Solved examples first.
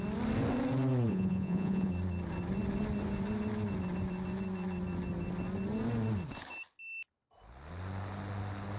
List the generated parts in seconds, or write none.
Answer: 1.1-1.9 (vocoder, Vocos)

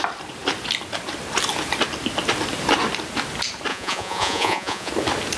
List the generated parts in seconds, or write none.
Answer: 3.7-4.9 (vocoder, Vocos)

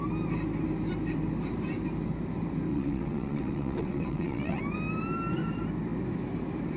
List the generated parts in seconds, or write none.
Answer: 2.7-4.6 (vocoder, WaveNeXt)

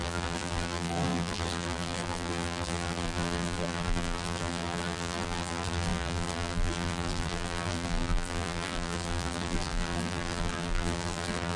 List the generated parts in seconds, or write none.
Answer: 0.0-11.6 (vocoder, BigVGAN v2)

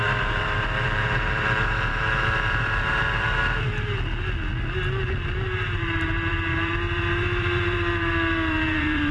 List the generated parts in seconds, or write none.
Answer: 0.0-3.4 (vocoder, BigVGAN v2); 5.4-9.1

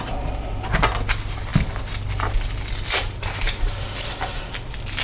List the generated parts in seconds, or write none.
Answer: none